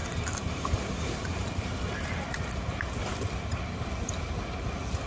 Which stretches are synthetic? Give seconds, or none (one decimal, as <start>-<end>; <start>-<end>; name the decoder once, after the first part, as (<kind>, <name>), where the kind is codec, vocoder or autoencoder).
0.0-1.8 (vocoder, BigVGAN v2)